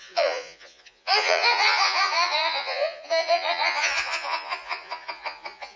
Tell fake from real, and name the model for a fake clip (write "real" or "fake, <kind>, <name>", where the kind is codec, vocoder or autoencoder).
fake, vocoder, Vocos